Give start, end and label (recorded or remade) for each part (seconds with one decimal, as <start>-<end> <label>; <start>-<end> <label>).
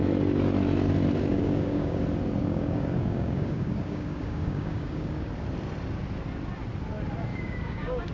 0.0-1.3 recorded; 1.3-2.0 remade; 2.0-2.4 recorded; 2.4-5.3 remade; 5.3-7.3 recorded; 7.3-8.1 remade